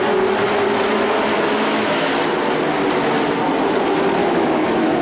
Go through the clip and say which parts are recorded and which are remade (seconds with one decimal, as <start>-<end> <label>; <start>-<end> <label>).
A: 0.0-1.3 recorded; 1.3-2.1 remade; 2.1-4.2 recorded; 4.2-5.0 remade